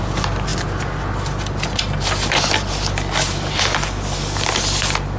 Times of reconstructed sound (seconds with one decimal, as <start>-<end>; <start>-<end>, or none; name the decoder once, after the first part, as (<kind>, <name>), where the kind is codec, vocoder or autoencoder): none